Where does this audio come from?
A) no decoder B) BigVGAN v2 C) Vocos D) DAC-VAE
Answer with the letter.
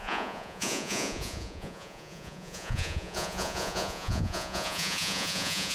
C